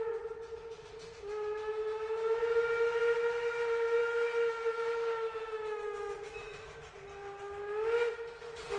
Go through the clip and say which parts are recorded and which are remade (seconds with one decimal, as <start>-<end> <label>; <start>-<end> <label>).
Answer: 0.0-1.6 recorded; 1.6-2.4 remade; 2.4-4.0 recorded; 4.0-6.9 remade; 6.9-8.8 recorded